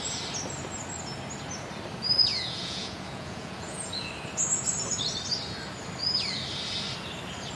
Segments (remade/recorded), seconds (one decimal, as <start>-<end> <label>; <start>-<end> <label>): 0.0-2.3 recorded; 2.3-4.1 remade; 4.1-7.6 recorded